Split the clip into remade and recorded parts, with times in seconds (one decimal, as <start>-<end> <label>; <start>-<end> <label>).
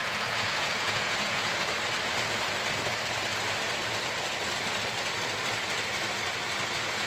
0.0-1.6 remade; 1.6-7.1 recorded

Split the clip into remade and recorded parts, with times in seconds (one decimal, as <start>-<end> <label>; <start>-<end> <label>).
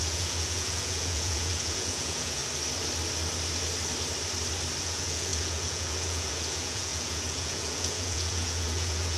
0.0-2.4 remade; 2.4-4.8 recorded; 4.8-9.2 remade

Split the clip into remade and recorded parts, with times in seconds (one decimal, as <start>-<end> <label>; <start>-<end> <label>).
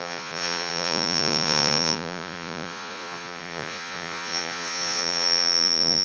0.0-6.0 remade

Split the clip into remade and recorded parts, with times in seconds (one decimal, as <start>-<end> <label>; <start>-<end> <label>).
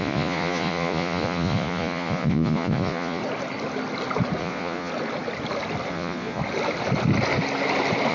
0.0-3.2 remade; 3.2-4.4 recorded; 4.4-4.9 remade; 4.9-5.9 recorded; 5.9-6.4 remade; 6.4-8.1 recorded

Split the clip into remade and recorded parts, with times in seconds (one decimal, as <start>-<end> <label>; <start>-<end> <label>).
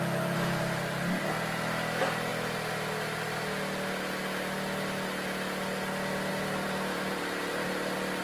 0.0-2.3 remade; 2.3-6.3 recorded; 6.3-8.2 remade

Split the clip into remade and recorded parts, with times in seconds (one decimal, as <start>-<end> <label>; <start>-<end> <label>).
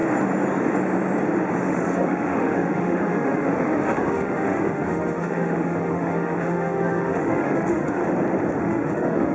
0.0-1.7 recorded; 1.7-8.0 remade; 8.0-8.6 recorded; 8.6-9.3 remade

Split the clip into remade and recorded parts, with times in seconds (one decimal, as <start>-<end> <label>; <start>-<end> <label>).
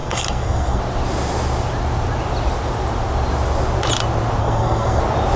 0.0-0.8 remade; 0.8-4.4 recorded; 4.4-5.0 remade; 5.0-5.4 recorded